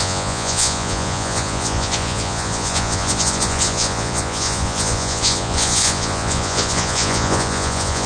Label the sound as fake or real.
fake